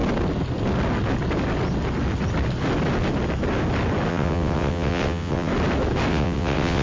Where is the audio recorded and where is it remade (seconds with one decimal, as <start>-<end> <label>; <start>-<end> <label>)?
0.0-4.1 recorded; 4.1-5.5 remade; 5.5-6.1 recorded; 6.1-6.8 remade